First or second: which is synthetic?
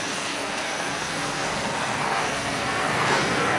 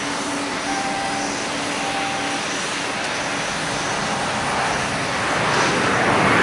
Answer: first